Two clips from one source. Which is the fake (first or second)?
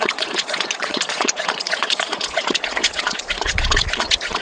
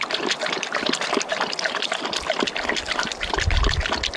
first